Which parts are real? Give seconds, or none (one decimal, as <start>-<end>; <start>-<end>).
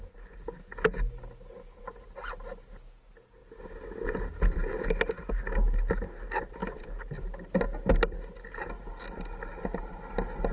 0.0-10.5